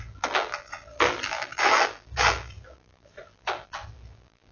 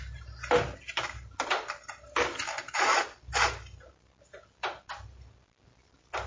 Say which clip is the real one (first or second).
second